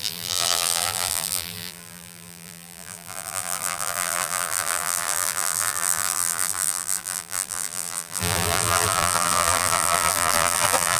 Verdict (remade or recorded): remade